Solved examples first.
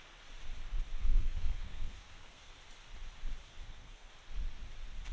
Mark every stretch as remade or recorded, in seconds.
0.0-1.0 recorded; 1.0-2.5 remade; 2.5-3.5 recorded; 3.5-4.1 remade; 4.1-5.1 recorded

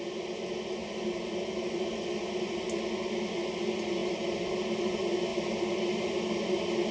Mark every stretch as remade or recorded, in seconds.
0.0-4.0 recorded; 4.0-4.5 remade; 4.5-5.3 recorded; 5.3-6.4 remade; 6.4-6.9 recorded

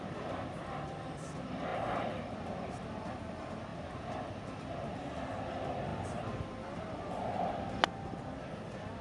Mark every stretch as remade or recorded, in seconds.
0.0-9.0 recorded

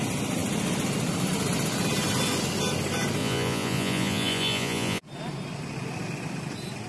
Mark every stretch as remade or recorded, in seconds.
0.0-3.2 recorded; 3.2-5.0 remade; 5.0-6.9 recorded

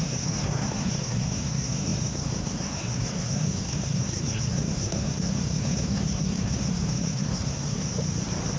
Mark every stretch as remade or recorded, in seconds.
0.0-7.9 remade; 7.9-8.6 recorded

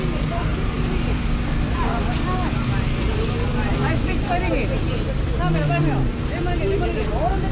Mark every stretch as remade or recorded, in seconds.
0.0-0.5 recorded; 0.5-2.5 remade; 2.5-7.5 recorded

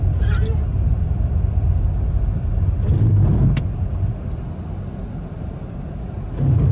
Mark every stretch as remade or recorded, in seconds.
0.0-6.7 recorded

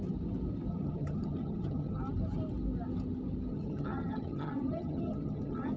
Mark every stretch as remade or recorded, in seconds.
0.0-0.7 recorded; 0.7-2.0 remade; 2.0-3.5 recorded; 3.5-5.8 remade